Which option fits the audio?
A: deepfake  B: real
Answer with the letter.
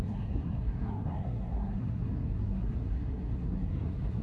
A